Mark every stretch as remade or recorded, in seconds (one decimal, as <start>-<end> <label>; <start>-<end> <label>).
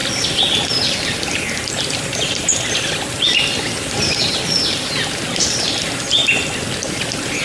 0.0-0.6 recorded; 0.6-2.5 remade; 2.5-3.9 recorded; 3.9-6.2 remade; 6.2-6.9 recorded; 6.9-7.4 remade